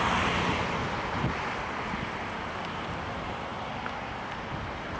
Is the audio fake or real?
real